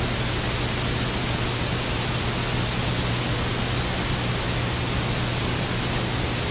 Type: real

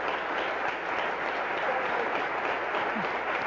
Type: real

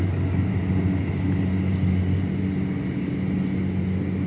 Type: real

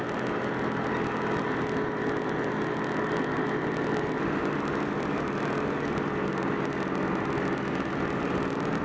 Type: real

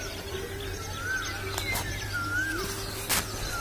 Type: real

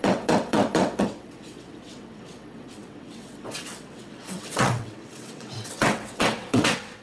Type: fake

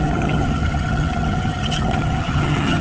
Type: fake